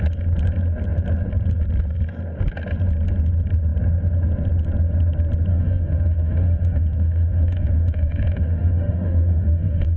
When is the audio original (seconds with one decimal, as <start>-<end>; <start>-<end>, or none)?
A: 0.0-5.5